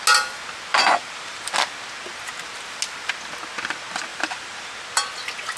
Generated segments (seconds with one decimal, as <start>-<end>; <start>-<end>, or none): 0.7-1.4; 4.1-4.7